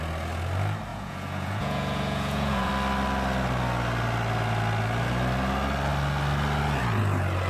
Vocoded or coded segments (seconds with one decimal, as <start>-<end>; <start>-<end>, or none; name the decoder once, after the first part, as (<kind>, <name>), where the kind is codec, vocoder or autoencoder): 0.9-2.7 (vocoder, Vocos)